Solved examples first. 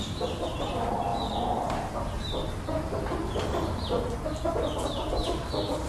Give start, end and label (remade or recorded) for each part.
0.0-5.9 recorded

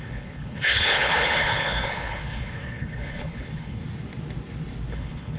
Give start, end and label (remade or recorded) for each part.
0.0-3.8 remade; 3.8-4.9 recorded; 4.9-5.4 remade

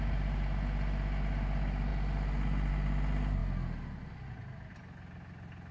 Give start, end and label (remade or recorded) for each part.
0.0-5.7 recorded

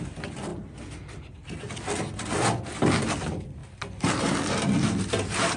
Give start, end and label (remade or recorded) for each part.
0.0-5.6 recorded

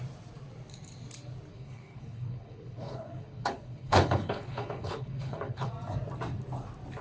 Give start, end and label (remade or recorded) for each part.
0.0-1.5 recorded; 1.5-5.7 remade; 5.7-7.0 recorded

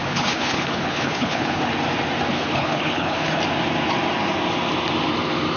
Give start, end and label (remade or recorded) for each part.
0.0-1.7 remade; 1.7-2.3 recorded; 2.3-3.4 remade; 3.4-5.6 recorded